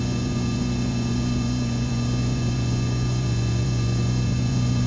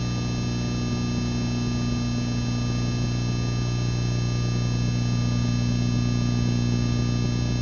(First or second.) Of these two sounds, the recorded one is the second